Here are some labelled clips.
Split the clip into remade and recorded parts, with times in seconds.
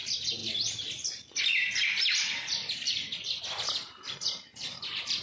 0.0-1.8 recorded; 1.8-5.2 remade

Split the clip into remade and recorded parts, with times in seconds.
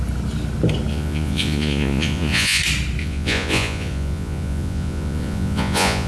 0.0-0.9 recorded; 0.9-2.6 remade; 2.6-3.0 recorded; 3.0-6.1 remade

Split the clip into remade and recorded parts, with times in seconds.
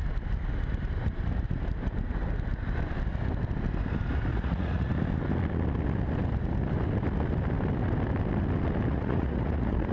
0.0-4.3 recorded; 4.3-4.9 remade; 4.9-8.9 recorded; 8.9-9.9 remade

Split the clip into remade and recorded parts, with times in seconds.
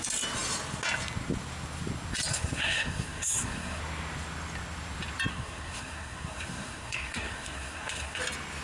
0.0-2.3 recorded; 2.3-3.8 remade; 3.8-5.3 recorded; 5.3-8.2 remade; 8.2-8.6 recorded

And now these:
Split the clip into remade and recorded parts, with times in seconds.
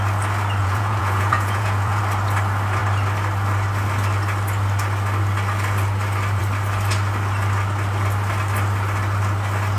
0.0-0.6 recorded; 0.6-2.0 remade; 2.0-9.8 recorded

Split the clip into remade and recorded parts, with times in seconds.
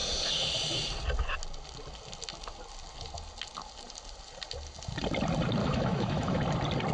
0.0-5.6 recorded; 5.6-6.4 remade; 6.4-6.9 recorded